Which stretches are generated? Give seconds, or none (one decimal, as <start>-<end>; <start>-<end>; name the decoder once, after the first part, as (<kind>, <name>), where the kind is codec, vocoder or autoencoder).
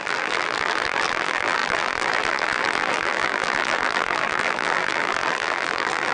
0.0-6.1 (vocoder, BigVGAN v2)